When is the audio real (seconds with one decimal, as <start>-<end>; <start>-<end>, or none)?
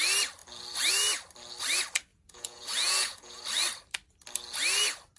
0.0-2.1; 3.4-5.2